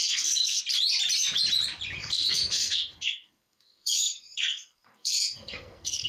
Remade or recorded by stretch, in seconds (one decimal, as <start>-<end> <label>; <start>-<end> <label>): 0.0-0.6 remade; 0.6-2.0 recorded; 2.0-6.1 remade